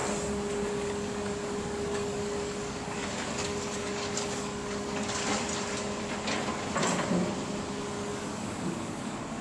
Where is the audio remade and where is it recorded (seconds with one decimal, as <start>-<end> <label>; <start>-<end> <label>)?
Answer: 0.0-0.7 recorded; 0.7-5.2 remade; 5.2-8.1 recorded; 8.1-9.4 remade